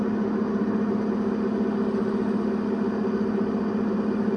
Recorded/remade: recorded